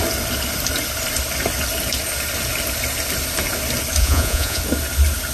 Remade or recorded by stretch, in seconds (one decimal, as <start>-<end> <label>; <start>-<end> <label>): 0.0-4.0 recorded; 4.0-4.6 remade; 4.6-5.3 recorded